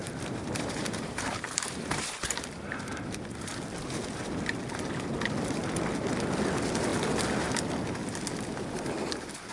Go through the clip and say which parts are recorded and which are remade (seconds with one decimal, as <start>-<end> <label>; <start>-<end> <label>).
0.0-3.5 remade; 3.5-9.5 recorded